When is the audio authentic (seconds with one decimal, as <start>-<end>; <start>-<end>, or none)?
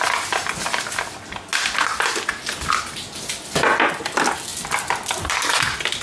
0.0-4.5